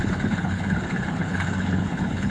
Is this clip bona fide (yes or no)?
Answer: no